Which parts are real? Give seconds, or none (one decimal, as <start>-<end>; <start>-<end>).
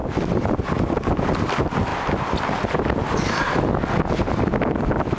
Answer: 1.9-4.4